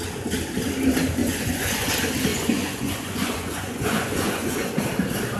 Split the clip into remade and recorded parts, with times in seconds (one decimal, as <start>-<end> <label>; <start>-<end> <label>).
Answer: 0.0-1.2 recorded; 1.2-1.9 remade; 1.9-2.3 recorded; 2.3-4.7 remade; 4.7-5.4 recorded